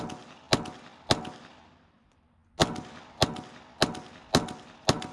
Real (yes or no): yes